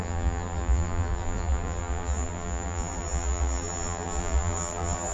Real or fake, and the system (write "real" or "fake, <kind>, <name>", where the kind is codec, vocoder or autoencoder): fake, vocoder, BigVGAN v2